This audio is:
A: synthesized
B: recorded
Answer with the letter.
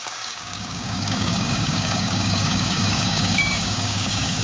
A